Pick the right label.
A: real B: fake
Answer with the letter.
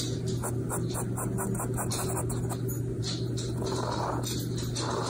A